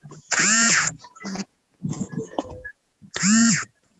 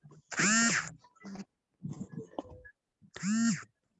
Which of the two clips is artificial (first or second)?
first